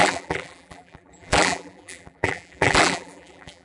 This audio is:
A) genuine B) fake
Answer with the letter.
B